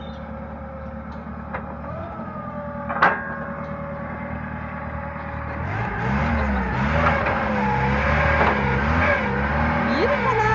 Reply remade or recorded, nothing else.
recorded